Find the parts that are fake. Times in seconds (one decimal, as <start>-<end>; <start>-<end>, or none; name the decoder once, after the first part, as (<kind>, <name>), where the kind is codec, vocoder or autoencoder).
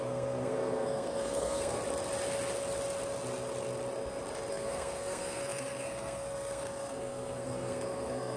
0.0-1.8 (codec, SNAC); 4.5-8.4